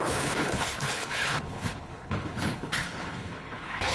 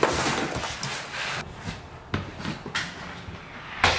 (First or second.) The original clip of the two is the second